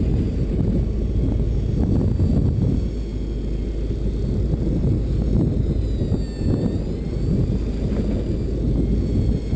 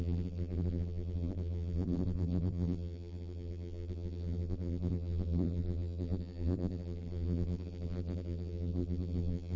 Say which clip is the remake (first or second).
second